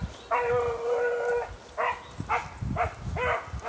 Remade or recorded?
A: recorded